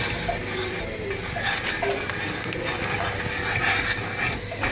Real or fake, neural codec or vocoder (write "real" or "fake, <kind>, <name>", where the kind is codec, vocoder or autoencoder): real